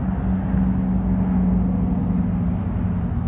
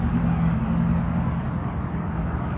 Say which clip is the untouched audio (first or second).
first